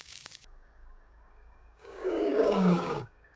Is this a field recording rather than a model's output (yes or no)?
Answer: no